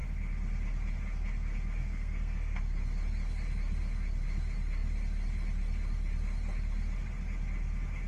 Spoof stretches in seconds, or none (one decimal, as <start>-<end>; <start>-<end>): 1.8-2.6